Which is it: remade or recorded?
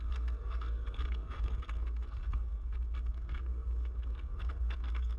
remade